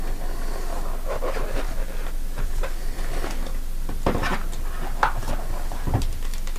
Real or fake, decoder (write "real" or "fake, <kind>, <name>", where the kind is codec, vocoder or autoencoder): real